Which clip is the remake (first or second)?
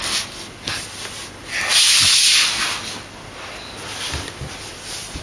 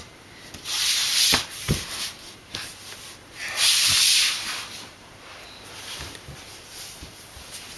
second